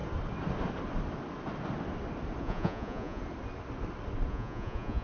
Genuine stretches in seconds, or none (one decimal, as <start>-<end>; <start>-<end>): 0.0-2.4; 3.2-4.3

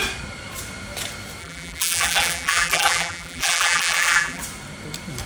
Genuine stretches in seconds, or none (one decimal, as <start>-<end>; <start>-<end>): 0.0-1.4; 4.4-5.3

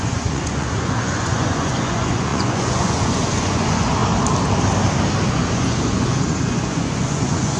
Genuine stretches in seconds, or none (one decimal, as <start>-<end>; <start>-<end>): 4.0-5.3

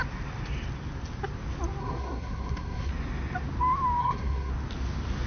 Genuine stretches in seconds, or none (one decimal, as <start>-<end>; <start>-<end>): 0.0-1.8; 2.9-4.0; 4.5-5.3